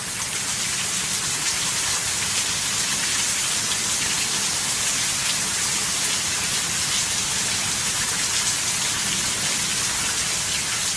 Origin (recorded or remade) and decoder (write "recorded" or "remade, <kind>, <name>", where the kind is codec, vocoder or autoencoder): recorded